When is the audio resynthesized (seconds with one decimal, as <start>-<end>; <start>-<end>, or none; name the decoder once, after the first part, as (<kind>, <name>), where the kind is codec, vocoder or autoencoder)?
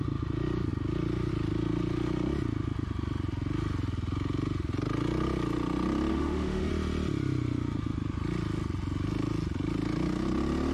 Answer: 6.1-6.7 (autoencoder, DAC-VAE)